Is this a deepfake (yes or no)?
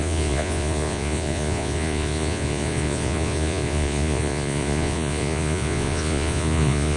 yes